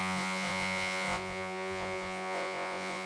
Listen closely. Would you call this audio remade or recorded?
remade